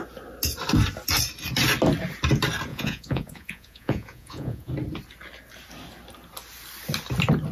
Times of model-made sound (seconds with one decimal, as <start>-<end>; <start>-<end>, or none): 2.7-4.7